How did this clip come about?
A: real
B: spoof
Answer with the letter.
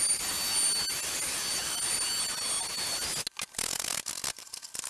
A